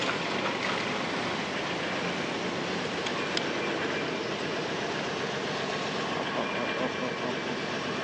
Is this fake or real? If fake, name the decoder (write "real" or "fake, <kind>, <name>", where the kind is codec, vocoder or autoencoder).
real